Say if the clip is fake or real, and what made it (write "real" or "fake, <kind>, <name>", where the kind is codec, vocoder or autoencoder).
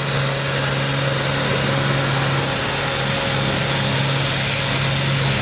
real